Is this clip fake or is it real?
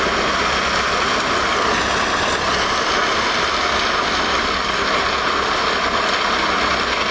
real